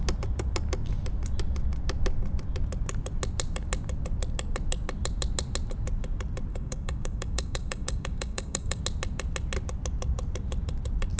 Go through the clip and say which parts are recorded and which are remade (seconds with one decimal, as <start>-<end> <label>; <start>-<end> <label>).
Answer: 0.0-6.5 recorded; 6.5-8.8 remade; 8.8-11.2 recorded